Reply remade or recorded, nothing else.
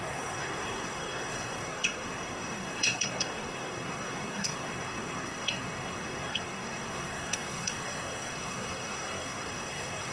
remade